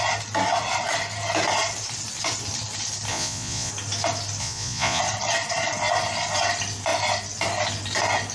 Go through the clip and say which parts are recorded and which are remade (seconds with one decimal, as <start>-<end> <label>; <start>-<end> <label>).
0.0-3.1 recorded; 3.1-3.7 remade; 3.7-4.4 recorded; 4.4-5.0 remade; 5.0-8.3 recorded